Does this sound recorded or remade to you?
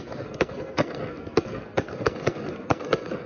remade